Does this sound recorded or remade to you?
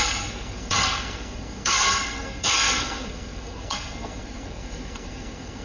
remade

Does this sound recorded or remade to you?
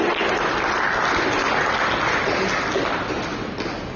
recorded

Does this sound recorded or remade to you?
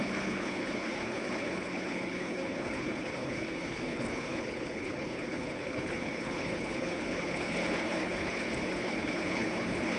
remade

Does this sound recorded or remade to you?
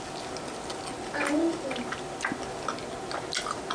recorded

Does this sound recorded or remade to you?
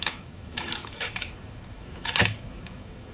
remade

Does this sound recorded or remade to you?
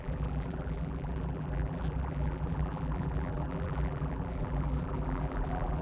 remade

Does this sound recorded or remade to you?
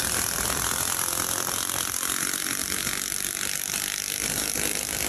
recorded